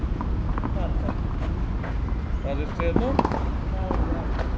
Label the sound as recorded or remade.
recorded